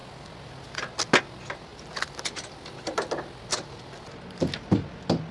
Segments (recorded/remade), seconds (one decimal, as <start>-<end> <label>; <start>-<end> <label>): 0.0-5.3 recorded